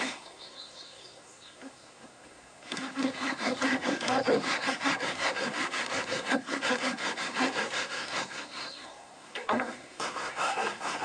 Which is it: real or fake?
fake